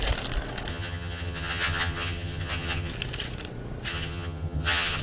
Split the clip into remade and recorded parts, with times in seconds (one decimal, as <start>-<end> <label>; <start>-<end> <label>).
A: 0.0-0.7 recorded; 0.7-2.9 remade; 2.9-3.9 recorded; 3.9-5.0 remade